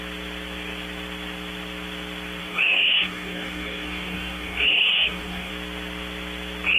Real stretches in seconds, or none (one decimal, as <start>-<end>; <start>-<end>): 0.0-2.4; 5.5-6.8